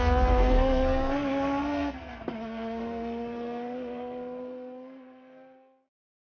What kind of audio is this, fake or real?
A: fake